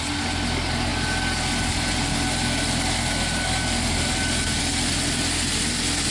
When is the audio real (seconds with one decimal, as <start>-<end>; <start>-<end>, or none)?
0.0-6.1